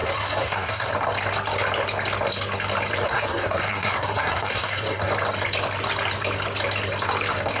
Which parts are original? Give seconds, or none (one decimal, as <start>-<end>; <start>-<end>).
0.9-3.0; 5.1-7.6